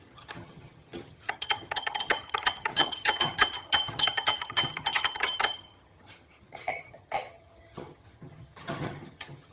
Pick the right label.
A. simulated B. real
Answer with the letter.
A